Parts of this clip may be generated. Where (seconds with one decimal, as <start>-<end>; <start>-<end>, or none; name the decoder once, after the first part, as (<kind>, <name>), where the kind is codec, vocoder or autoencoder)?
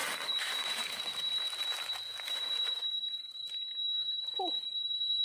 0.0-1.0 (vocoder, BigVGAN v2)